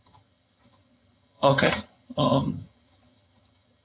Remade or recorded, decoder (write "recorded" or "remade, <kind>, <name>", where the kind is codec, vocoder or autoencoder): remade, vocoder, HiFi-GAN